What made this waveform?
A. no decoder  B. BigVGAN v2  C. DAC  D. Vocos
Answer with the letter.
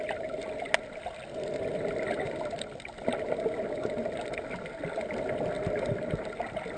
A